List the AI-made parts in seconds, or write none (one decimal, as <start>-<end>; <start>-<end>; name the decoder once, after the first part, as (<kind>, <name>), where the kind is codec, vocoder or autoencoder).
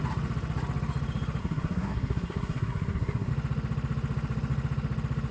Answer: 1.4-3.3 (codec, SNAC)